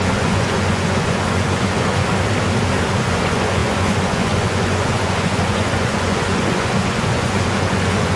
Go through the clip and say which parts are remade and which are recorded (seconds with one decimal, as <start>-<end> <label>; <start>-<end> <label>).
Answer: 0.0-2.1 remade; 2.1-2.9 recorded; 2.9-8.2 remade